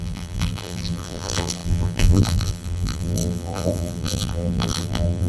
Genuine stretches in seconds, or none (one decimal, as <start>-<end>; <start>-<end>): none